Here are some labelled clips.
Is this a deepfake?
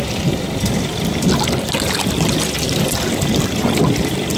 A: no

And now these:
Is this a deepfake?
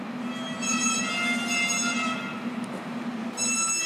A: no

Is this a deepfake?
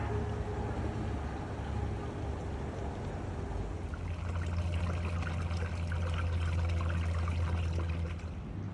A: no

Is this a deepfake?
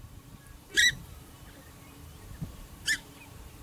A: yes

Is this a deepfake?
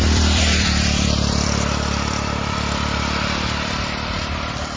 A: yes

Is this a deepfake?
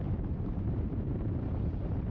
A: yes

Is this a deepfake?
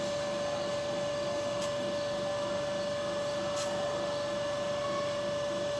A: no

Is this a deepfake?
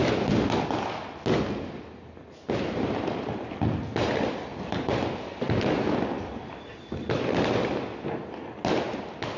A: no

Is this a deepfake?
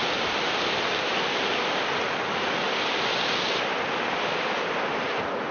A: no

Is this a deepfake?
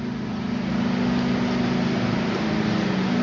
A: no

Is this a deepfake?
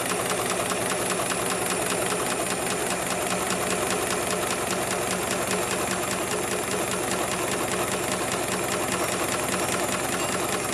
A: no